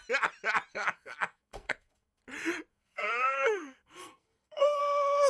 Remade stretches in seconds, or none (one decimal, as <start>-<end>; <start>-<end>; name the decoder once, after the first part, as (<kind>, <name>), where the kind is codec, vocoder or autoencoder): 0.7-2.2 (codec, SNAC); 2.7-4.8